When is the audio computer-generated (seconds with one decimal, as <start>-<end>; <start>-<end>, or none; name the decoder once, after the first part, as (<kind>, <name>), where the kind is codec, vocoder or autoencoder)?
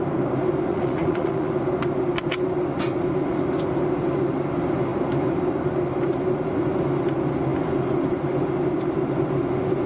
0.7-1.5 (vocoder, Vocos)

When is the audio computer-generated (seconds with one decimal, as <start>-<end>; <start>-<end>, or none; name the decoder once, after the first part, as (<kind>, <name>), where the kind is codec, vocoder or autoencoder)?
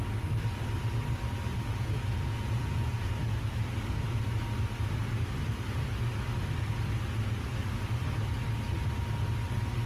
1.5-3.1 (vocoder, Vocos)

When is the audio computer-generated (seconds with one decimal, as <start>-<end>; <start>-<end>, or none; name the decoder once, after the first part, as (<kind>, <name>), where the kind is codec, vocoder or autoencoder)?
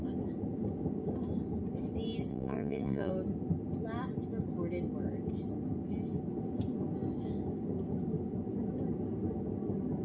2.3-3.1 (vocoder, Vocos)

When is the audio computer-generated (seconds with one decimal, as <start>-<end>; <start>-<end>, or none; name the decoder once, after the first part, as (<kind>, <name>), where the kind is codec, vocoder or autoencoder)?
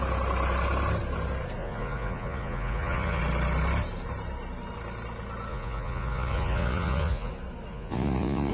1.6-3.2 (vocoder, Vocos); 5.5-7.3; 7.7-8.5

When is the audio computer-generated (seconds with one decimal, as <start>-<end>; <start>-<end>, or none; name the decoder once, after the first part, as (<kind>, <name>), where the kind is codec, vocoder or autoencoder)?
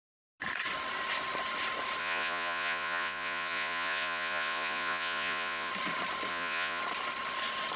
2.0-5.7 (vocoder, Vocos); 6.3-6.8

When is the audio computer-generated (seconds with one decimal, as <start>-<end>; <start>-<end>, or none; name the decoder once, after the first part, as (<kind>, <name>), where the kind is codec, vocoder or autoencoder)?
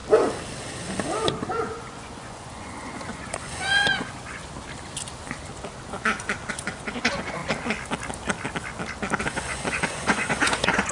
1.5-4.4 (vocoder, Vocos); 6.5-7.4; 9.2-10.9